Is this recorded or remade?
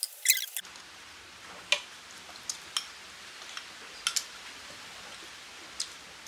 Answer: recorded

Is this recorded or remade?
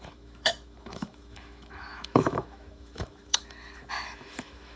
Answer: remade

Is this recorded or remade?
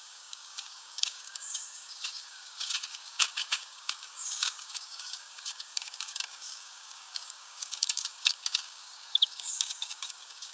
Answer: remade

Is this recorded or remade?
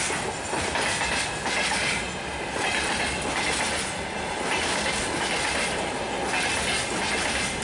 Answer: recorded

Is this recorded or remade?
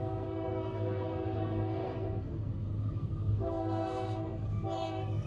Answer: remade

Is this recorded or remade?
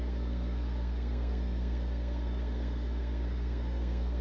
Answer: remade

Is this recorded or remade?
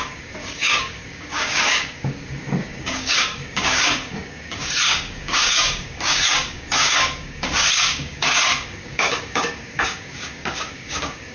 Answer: remade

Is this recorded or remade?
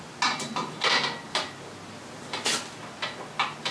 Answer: recorded